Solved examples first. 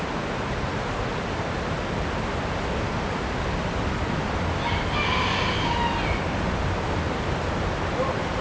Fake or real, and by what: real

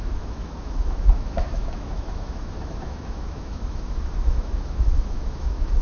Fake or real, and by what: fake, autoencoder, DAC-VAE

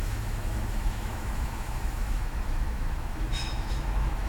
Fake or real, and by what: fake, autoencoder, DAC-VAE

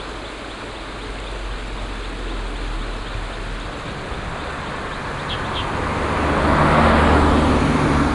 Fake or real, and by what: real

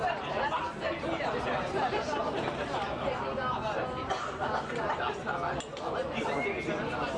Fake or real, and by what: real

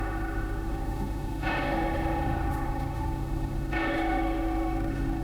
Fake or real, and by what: fake, autoencoder, DAC-VAE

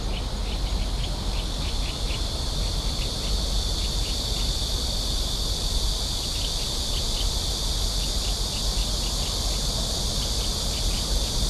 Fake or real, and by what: real